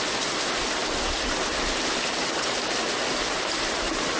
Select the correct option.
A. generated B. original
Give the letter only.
B